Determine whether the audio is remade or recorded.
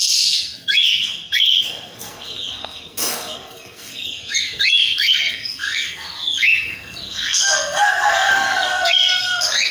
remade